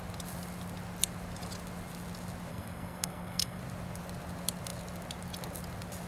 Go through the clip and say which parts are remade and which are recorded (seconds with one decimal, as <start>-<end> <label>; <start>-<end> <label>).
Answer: 0.0-2.5 recorded; 2.5-3.6 remade; 3.6-6.1 recorded